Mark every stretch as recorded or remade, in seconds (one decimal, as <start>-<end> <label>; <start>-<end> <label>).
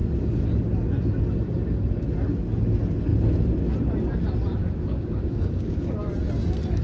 0.0-4.6 recorded; 4.6-6.0 remade; 6.0-6.8 recorded